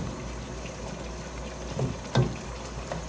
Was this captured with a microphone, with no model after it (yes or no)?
yes